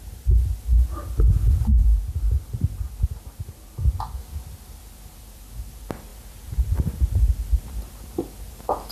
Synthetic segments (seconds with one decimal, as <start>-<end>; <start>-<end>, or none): none